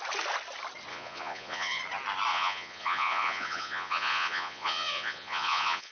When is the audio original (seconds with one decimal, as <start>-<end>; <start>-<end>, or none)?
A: 0.0-0.9; 1.8-2.3